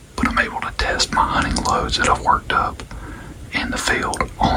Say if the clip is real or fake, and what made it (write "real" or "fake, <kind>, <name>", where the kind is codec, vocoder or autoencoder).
real